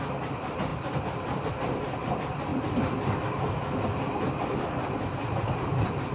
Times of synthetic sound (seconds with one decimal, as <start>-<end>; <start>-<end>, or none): none